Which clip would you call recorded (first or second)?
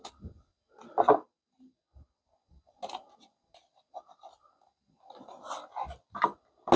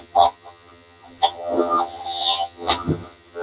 first